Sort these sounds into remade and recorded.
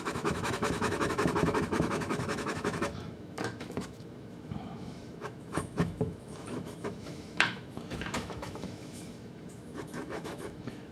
remade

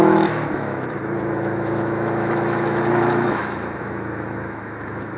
remade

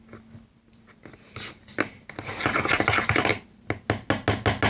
recorded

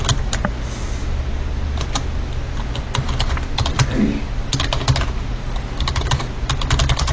recorded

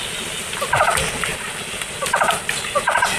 recorded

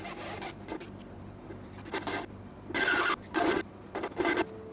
recorded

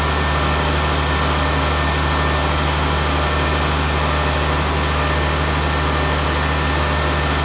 recorded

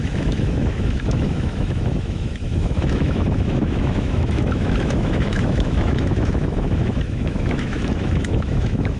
remade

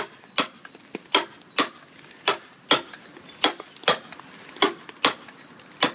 recorded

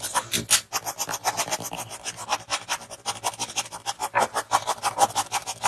recorded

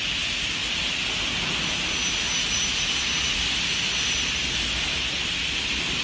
recorded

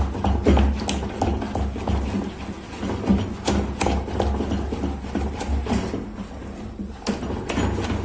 recorded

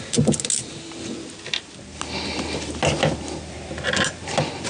recorded